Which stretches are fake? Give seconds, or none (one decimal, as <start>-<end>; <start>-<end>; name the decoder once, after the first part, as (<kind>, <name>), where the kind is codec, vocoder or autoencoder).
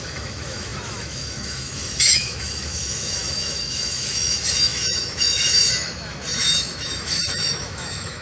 0.0-8.2 (autoencoder, DAC-VAE)